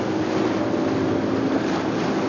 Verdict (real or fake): real